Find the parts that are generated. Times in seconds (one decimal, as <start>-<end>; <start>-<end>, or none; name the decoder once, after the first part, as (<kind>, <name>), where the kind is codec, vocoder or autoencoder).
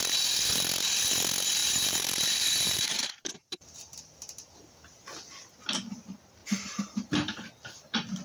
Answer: 1.6-4.6 (vocoder, BigVGAN v2); 6.4-7.4